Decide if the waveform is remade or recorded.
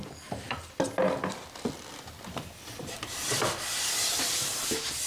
recorded